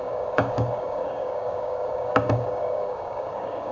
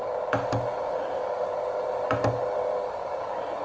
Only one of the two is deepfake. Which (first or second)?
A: first